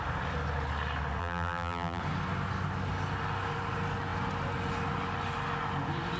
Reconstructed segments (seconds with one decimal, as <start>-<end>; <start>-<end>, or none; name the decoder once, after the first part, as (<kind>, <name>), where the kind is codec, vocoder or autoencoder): 1.2-2.0 (vocoder, BigVGAN v2)